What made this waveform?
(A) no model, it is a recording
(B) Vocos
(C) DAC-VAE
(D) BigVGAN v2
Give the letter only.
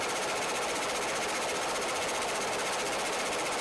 A